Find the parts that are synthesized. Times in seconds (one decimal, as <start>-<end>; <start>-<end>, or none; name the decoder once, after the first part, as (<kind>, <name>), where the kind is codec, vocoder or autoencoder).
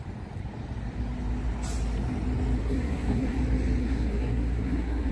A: 2.6-3.4 (codec, SNAC); 3.8-5.1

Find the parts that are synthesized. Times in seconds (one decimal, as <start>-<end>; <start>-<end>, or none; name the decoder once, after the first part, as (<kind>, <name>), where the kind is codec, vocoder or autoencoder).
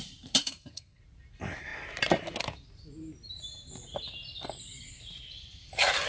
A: 0.4-1.0 (codec, SNAC)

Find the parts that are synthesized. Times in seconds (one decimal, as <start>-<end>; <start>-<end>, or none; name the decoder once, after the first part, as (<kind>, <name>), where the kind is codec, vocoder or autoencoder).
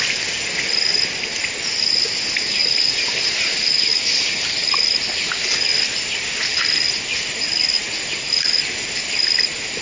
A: none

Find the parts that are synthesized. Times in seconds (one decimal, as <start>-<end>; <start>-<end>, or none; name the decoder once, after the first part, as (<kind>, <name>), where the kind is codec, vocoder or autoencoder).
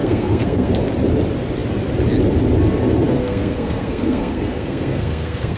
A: 0.0-0.7 (codec, SNAC); 3.2-5.6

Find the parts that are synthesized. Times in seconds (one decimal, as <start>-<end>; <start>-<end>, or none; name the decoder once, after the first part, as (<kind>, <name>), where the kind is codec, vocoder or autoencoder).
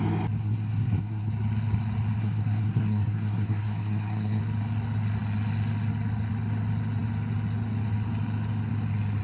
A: 0.4-1.3 (codec, SNAC); 2.2-4.4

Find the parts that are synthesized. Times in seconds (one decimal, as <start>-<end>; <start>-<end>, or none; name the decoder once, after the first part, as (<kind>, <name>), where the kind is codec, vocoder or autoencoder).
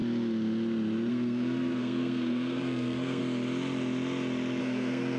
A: 1.1-3.2 (codec, SNAC); 4.6-5.2